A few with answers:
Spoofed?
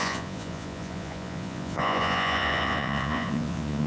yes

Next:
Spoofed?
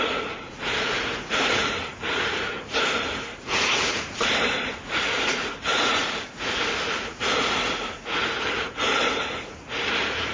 yes